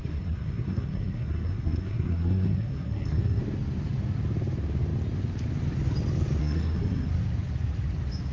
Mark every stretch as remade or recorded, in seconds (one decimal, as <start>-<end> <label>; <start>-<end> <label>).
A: 0.0-3.4 remade; 3.4-6.4 recorded; 6.4-7.1 remade; 7.1-8.3 recorded